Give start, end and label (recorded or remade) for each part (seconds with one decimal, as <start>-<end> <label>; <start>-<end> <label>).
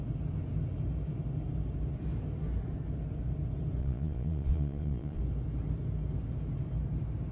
0.0-3.8 recorded; 3.8-5.2 remade; 5.2-7.3 recorded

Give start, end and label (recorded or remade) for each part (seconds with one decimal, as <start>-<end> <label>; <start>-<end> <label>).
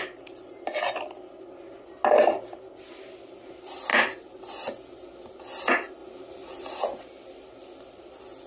0.0-8.5 recorded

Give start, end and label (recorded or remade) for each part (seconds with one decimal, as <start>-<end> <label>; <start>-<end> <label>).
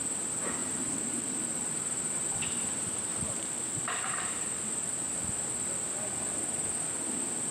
0.0-0.6 recorded; 0.6-2.0 remade; 2.0-3.1 recorded; 3.1-5.2 remade; 5.2-7.5 recorded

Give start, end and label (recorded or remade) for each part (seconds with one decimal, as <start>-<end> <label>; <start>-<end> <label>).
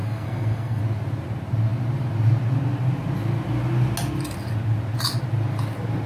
0.0-0.8 remade; 0.8-6.1 recorded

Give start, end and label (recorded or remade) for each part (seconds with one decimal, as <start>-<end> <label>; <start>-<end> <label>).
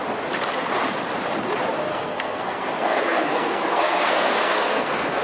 0.0-1.9 recorded; 1.9-5.2 remade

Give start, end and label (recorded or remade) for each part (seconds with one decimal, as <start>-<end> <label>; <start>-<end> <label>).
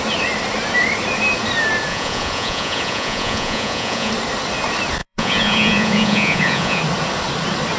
0.0-1.9 recorded; 1.9-4.1 remade; 4.1-5.0 recorded; 5.0-6.8 remade; 6.8-7.8 recorded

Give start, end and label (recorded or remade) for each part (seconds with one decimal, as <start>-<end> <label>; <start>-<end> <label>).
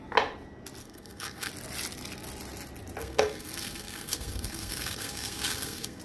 0.0-0.8 recorded; 0.8-1.5 remade; 1.5-3.0 recorded; 3.0-6.0 remade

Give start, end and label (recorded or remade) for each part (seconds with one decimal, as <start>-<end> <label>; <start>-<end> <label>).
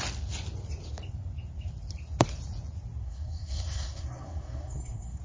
0.0-3.0 recorded; 3.0-5.2 remade